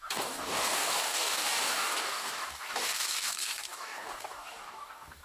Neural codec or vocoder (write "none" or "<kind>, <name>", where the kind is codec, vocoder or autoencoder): codec, DAC